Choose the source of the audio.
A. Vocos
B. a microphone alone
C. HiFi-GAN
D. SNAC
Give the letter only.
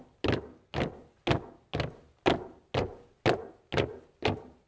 B